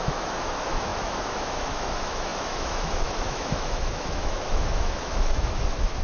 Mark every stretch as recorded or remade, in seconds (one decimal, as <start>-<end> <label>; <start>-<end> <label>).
0.0-6.0 remade